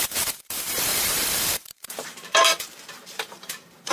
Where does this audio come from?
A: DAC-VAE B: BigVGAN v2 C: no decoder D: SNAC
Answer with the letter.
B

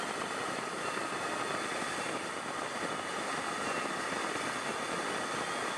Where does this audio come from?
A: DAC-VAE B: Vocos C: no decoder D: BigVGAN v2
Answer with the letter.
D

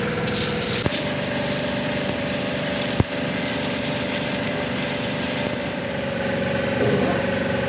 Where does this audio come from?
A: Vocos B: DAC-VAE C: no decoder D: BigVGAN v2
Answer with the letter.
D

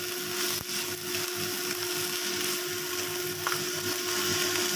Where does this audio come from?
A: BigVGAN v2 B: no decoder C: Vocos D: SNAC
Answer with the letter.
B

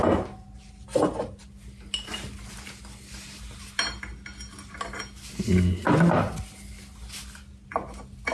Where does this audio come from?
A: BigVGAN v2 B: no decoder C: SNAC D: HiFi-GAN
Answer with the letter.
B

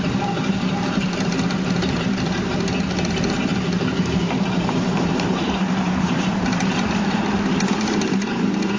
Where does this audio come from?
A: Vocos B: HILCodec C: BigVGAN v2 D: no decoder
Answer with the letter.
C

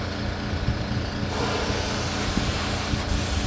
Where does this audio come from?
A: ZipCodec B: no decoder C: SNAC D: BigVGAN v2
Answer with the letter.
B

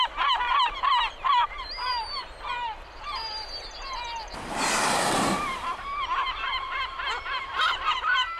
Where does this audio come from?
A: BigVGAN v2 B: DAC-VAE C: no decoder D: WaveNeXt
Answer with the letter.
A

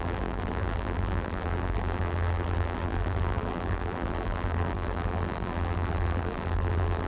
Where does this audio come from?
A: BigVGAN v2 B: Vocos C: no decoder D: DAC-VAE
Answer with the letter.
A